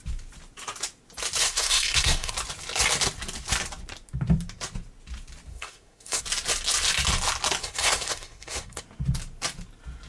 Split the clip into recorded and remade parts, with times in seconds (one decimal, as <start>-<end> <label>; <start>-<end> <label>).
0.0-1.4 recorded; 1.4-2.3 remade; 2.3-5.5 recorded; 5.5-6.2 remade; 6.2-7.6 recorded; 7.6-8.8 remade; 8.8-10.1 recorded